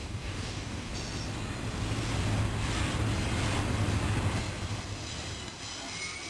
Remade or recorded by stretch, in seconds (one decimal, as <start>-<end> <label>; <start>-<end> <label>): 0.0-0.9 remade; 0.9-6.3 recorded

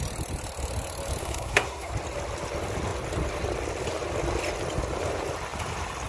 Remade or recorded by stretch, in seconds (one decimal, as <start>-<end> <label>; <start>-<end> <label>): 0.0-1.2 recorded; 1.2-1.9 remade; 1.9-6.1 recorded

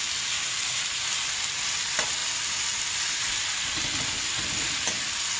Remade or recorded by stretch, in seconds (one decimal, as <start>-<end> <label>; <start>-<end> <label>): 0.0-5.4 recorded

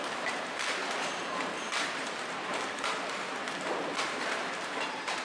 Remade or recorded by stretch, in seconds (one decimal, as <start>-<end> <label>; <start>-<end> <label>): 0.0-2.9 remade; 2.9-3.6 recorded; 3.6-5.2 remade

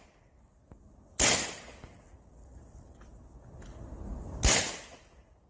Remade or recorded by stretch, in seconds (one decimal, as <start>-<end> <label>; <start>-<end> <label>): 0.0-5.5 recorded